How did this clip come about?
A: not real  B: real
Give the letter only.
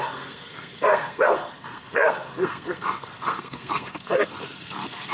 A